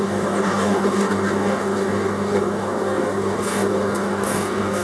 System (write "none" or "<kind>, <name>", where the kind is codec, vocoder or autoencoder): codec, DAC